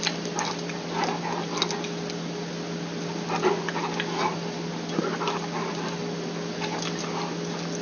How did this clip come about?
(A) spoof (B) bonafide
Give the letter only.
B